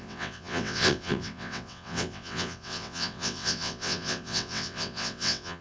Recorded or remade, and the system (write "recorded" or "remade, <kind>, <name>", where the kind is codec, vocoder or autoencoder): remade, vocoder, WaveNeXt